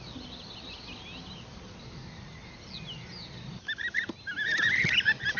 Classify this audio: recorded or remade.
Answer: recorded